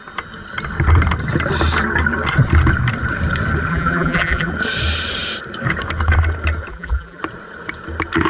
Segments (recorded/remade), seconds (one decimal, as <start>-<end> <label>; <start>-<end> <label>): 0.0-3.7 recorded; 3.7-4.5 remade; 4.5-6.7 recorded; 6.7-7.2 remade; 7.2-8.3 recorded

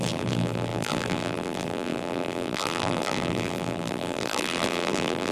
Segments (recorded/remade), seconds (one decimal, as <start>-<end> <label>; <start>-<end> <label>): 0.0-5.3 remade